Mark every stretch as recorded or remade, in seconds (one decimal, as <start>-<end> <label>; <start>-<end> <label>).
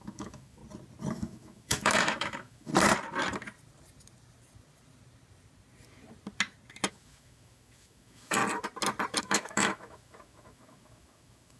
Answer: 0.0-0.6 remade; 0.6-1.1 recorded; 1.1-2.7 remade; 2.7-6.9 recorded; 6.9-8.4 remade; 8.4-9.2 recorded; 9.2-11.6 remade